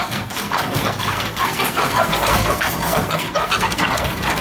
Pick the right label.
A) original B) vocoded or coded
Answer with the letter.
B